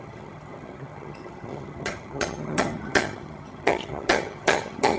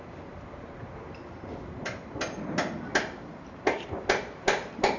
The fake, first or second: first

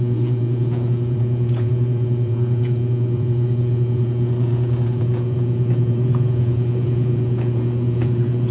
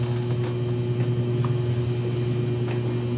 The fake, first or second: first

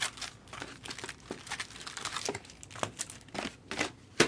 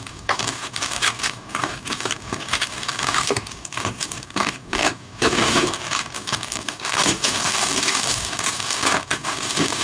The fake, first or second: second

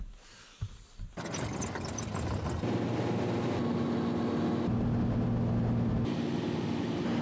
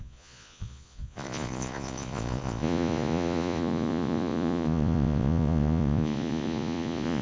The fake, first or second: second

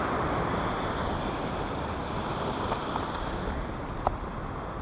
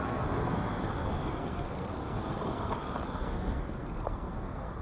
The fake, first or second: second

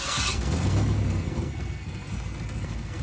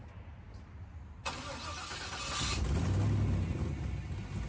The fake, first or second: first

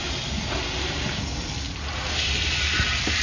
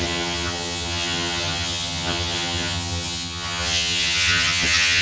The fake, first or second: second